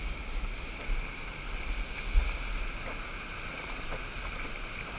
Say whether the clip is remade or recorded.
recorded